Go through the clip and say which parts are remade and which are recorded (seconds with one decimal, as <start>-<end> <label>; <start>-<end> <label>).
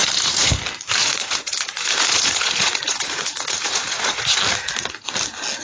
0.0-0.5 remade; 0.5-1.0 recorded; 1.0-4.4 remade; 4.4-5.6 recorded